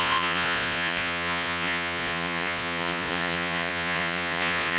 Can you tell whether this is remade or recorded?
remade